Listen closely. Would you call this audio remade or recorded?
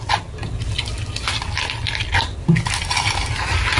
recorded